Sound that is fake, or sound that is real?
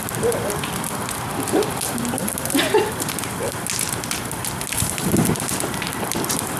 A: real